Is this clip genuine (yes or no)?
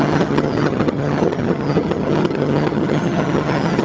no